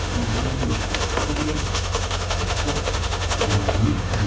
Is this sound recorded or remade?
remade